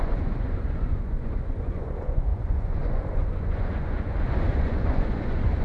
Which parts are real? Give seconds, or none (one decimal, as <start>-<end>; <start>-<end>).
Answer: none